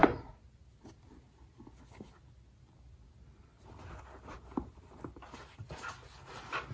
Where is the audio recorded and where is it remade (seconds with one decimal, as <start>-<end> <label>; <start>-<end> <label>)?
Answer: 0.0-6.7 recorded